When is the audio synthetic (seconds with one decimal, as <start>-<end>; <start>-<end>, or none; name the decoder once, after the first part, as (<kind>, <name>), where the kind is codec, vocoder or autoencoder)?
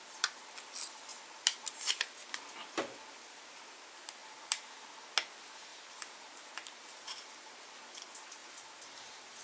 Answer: 4.2-5.1 (vocoder, BigVGAN v2); 5.7-7.5; 8.4-9.4